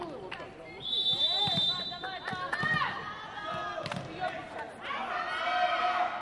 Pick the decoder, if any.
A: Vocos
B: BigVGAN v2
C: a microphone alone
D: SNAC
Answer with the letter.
C